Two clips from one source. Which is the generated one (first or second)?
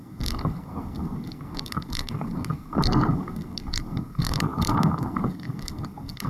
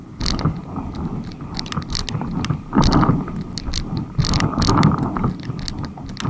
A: first